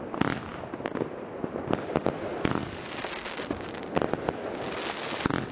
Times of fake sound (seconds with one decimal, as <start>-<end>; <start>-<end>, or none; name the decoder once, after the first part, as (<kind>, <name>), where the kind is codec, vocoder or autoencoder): none